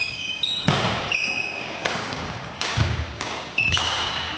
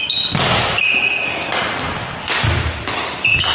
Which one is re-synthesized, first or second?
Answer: first